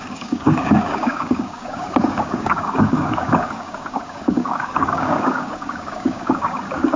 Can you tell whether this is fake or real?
fake